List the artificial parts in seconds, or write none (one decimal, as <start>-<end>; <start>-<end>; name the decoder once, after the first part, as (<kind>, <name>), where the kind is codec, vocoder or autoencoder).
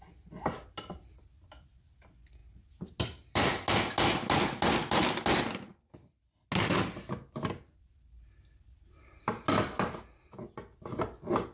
none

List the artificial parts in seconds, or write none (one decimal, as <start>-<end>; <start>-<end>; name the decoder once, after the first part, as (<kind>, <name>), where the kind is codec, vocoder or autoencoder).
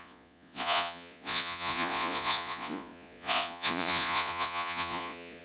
0.0-5.4 (vocoder, Vocos)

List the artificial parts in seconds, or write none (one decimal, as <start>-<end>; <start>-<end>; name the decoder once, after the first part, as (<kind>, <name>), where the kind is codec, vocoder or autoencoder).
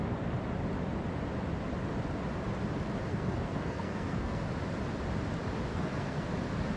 3.1-4.4 (codec, SNAC); 5.7-6.3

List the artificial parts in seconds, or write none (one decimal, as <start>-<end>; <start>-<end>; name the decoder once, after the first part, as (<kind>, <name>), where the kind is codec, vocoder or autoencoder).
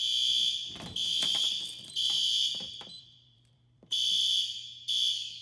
1.1-4.3 (vocoder, BigVGAN v2)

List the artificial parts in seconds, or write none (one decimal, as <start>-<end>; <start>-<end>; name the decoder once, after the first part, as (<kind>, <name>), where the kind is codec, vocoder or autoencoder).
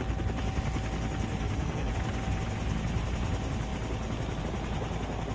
1.3-1.9 (codec, SNAC)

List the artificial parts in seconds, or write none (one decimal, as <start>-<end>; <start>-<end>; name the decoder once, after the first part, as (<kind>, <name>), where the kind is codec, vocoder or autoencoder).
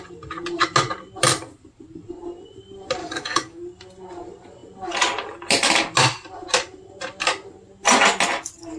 3.0-3.6 (codec, DAC)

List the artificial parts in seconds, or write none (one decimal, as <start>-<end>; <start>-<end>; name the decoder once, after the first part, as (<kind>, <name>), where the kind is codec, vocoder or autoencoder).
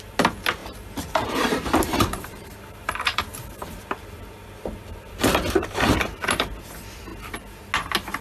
0.6-3.2 (vocoder, BigVGAN v2)